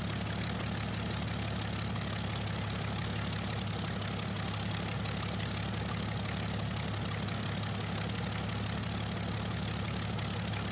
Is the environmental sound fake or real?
real